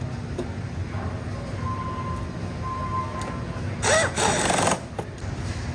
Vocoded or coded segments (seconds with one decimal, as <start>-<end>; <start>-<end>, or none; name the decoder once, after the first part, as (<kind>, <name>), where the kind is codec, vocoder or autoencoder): none